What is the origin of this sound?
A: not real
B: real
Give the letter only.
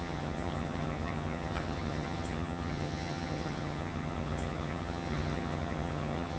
A